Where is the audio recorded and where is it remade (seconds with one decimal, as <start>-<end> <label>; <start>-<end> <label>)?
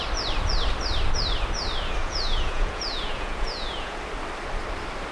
0.0-2.0 recorded; 2.0-4.0 remade; 4.0-5.1 recorded